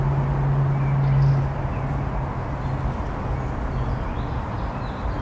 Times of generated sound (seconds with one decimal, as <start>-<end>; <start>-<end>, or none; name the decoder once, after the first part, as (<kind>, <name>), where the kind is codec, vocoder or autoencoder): none

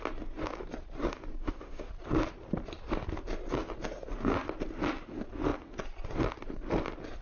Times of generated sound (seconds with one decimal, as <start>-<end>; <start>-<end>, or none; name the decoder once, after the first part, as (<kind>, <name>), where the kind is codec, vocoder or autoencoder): 1.4-1.9 (autoencoder, DAC-VAE)

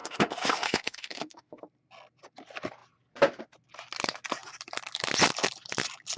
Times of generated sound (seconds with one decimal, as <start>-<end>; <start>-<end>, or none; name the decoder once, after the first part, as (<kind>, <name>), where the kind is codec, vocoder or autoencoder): 0.0-1.6 (autoencoder, DAC-VAE)

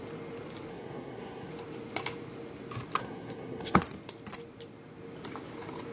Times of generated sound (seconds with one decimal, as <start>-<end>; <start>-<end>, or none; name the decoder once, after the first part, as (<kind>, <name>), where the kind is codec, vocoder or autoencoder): 0.7-1.5 (codec, SNAC); 3.0-3.8

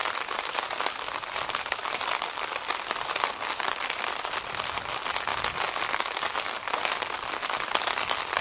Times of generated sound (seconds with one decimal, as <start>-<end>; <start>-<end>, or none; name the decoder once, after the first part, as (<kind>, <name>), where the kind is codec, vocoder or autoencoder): 0.0-3.3 (vocoder, BigVGAN v2)

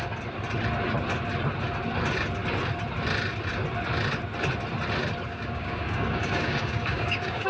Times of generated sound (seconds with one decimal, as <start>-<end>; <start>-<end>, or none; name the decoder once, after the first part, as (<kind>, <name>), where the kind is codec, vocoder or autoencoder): 5.3-7.5 (codec, DAC)

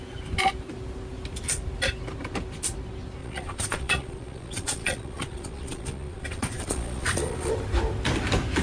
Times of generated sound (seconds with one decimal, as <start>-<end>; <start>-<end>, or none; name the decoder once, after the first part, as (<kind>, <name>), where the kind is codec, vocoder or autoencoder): 3.2-7.5 (vocoder, Vocos)